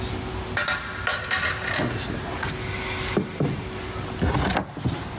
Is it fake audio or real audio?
real